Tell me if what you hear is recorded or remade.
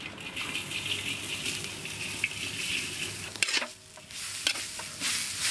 recorded